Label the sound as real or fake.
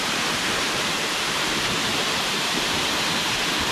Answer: fake